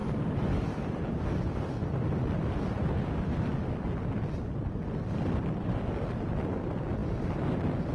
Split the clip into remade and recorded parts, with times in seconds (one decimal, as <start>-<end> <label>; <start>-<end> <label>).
0.0-2.0 remade; 2.0-7.9 recorded